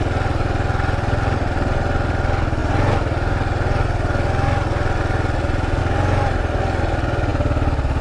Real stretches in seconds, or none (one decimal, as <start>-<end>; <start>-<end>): 0.0-8.0